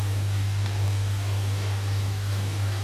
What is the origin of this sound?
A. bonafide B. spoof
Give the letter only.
B